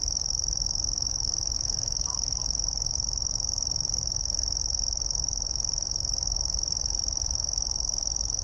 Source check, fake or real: fake